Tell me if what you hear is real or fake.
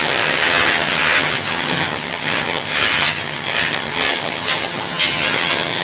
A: fake